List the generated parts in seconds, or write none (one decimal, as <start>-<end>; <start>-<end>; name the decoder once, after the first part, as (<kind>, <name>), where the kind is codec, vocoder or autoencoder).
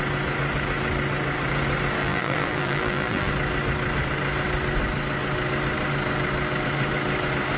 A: 2.0-3.3 (vocoder, BigVGAN v2)